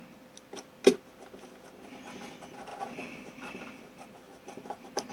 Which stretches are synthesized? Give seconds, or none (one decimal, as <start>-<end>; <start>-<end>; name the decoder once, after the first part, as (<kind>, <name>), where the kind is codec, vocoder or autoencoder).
none